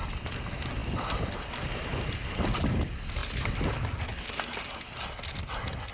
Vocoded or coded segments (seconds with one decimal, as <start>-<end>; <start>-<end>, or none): none

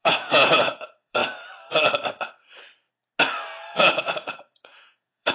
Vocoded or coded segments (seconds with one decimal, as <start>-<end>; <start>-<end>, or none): 0.0-1.2; 3.8-5.3

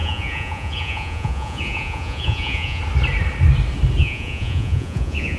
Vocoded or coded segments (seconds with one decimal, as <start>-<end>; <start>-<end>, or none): 0.0-2.8; 4.0-5.4

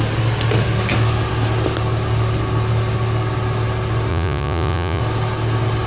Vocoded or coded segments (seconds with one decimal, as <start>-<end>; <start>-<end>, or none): 4.1-5.0

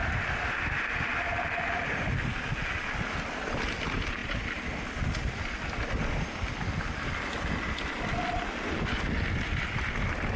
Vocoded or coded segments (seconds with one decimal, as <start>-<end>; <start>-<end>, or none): none

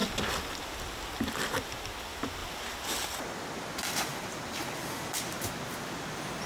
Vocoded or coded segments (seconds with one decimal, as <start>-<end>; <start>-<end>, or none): none

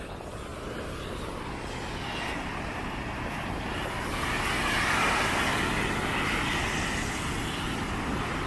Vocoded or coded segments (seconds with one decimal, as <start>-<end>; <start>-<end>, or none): none